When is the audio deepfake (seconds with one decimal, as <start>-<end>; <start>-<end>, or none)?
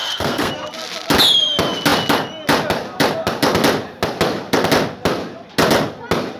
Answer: 0.0-0.5